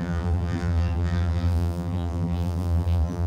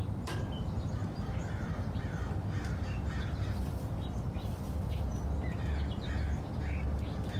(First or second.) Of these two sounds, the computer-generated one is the first